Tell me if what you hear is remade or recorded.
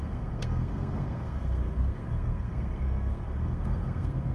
remade